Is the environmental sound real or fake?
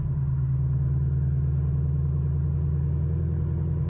real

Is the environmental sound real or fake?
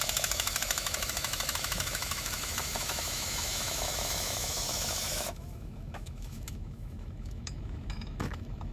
fake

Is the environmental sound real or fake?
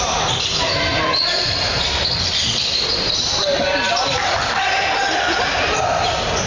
real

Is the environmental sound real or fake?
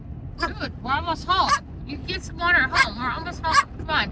real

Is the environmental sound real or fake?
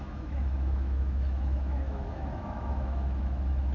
fake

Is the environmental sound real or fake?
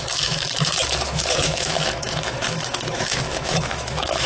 fake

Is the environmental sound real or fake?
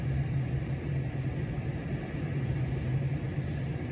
real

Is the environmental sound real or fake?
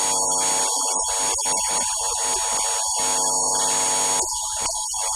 real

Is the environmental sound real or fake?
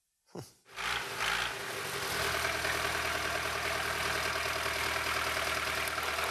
real